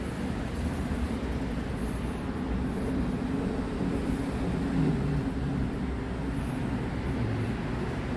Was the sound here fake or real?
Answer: real